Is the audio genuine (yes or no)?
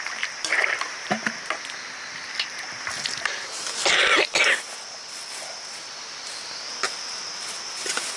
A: no